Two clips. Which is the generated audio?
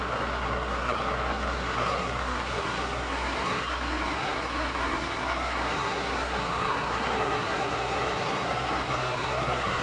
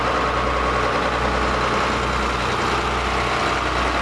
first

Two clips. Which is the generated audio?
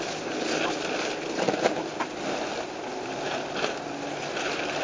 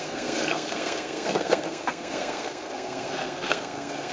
second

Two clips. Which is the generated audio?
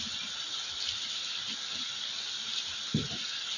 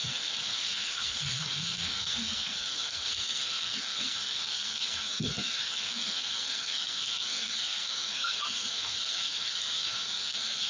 second